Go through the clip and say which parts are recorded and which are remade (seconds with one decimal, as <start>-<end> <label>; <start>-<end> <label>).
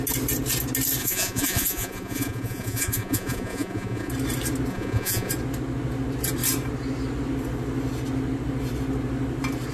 0.0-1.0 recorded; 1.0-4.1 remade; 4.1-4.7 recorded; 4.7-5.3 remade; 5.3-9.7 recorded